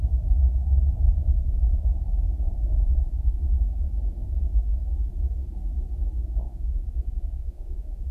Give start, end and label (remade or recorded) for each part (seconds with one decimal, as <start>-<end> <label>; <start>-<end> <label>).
0.0-1.1 recorded; 1.1-2.1 remade; 2.1-2.7 recorded; 2.7-3.7 remade; 3.7-6.2 recorded; 6.2-8.1 remade